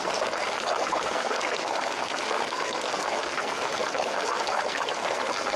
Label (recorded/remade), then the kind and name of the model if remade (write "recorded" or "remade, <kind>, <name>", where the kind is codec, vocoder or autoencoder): remade, codec, SNAC